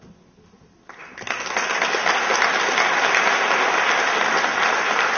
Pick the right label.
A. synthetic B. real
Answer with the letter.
B